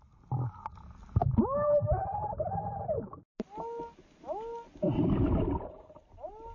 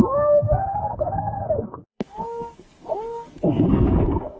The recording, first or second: first